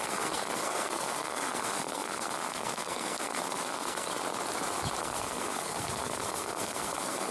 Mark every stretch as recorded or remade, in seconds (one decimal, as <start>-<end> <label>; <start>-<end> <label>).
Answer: 0.0-4.1 remade; 4.1-5.0 recorded; 5.0-7.3 remade